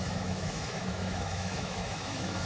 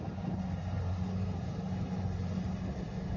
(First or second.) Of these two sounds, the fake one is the first